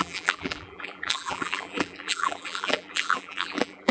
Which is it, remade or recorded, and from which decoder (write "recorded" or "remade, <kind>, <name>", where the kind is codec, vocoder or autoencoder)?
remade, vocoder, BigVGAN v2